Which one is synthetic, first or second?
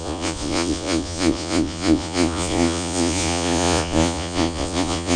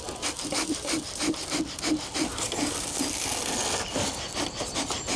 first